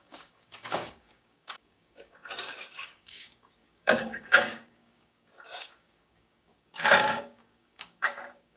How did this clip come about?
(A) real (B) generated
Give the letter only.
B